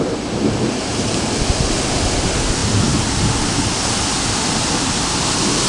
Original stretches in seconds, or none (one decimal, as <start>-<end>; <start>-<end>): 0.0-5.7